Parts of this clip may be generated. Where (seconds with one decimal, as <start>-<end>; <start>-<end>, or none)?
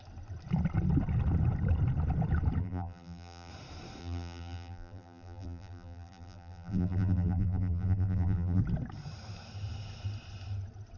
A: 2.6-3.5; 4.0-8.6